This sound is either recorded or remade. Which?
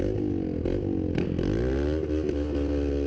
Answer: recorded